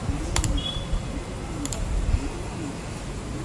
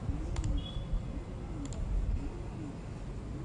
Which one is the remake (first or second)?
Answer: first